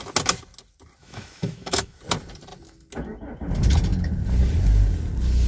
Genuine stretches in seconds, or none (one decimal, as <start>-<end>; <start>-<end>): 0.0-1.0; 2.0-5.5

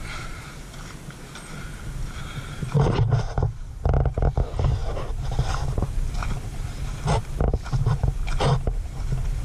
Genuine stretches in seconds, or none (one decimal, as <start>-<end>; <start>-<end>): 0.0-9.4

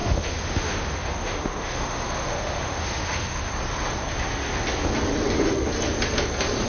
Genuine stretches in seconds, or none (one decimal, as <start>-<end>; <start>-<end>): 3.5-6.7

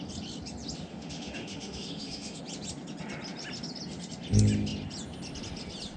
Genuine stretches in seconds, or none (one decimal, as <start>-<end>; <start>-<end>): 0.0-0.9; 2.4-6.0

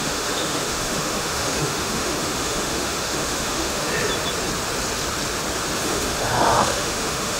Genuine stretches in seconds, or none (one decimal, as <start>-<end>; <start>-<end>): 3.9-5.8

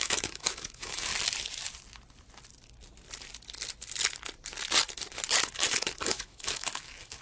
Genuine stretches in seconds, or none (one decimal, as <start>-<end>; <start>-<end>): 1.1-5.4

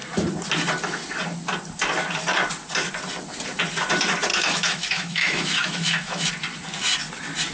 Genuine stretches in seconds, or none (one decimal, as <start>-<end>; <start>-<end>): 0.0-4.3; 6.3-7.5